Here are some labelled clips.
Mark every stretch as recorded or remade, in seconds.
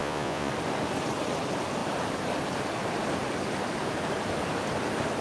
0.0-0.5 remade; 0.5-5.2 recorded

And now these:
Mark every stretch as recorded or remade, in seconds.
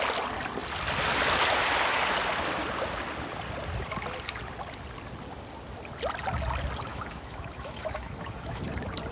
0.0-6.9 recorded; 6.9-8.6 remade; 8.6-9.1 recorded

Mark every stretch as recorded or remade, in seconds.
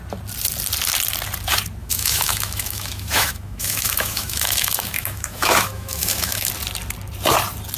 0.0-1.8 recorded; 1.8-6.5 remade; 6.5-7.8 recorded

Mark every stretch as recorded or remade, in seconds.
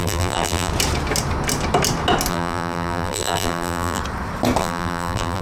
0.0-0.7 remade; 0.7-2.3 recorded; 2.3-4.0 remade; 4.0-4.6 recorded; 4.6-5.4 remade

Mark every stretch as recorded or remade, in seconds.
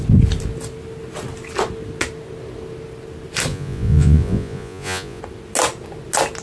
0.0-3.5 recorded; 3.5-5.2 remade; 5.2-6.4 recorded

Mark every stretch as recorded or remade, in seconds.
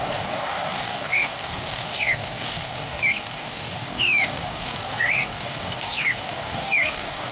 0.0-7.3 remade